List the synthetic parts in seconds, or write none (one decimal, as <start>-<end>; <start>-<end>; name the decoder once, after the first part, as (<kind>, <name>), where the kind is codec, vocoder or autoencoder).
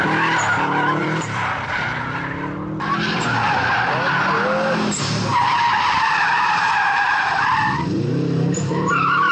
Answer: 1.0-1.6 (vocoder, BigVGAN v2); 5.3-9.3